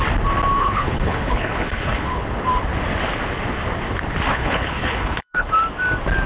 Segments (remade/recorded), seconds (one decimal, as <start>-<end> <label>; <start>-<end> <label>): 0.0-0.6 recorded; 0.6-2.2 remade; 2.2-4.3 recorded; 4.3-5.5 remade; 5.5-6.3 recorded